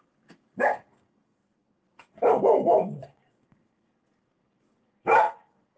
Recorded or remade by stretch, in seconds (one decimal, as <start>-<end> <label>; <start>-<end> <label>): 0.0-5.8 remade